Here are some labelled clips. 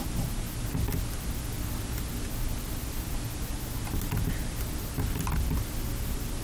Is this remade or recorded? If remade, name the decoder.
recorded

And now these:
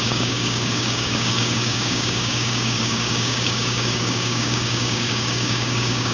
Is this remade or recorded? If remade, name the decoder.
remade, codec, DAC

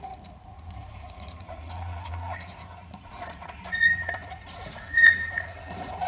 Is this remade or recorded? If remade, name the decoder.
remade, vocoder, Vocos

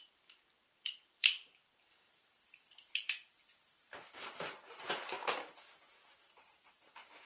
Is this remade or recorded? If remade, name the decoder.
remade, vocoder, BigVGAN v2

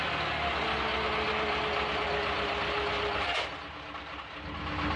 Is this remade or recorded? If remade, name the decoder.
recorded